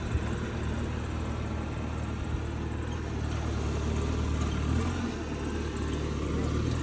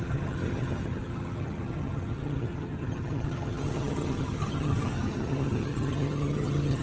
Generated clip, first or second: second